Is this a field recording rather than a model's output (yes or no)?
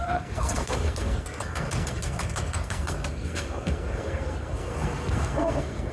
no